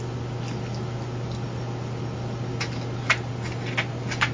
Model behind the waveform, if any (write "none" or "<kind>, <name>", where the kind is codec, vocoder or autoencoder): none